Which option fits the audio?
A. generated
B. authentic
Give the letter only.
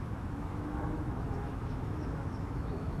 A